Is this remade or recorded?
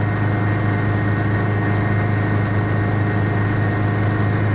recorded